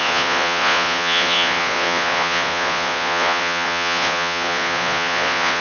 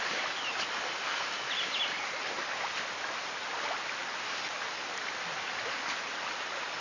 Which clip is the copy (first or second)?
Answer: first